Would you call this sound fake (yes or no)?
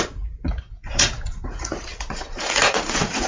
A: yes